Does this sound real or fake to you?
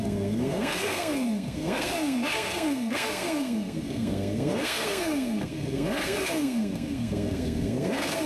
fake